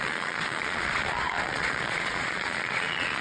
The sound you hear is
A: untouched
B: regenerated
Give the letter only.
B